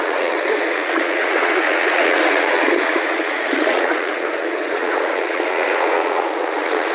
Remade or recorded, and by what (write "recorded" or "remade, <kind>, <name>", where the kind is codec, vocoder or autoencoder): remade, vocoder, Vocos